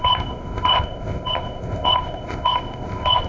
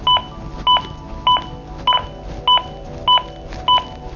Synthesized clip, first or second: first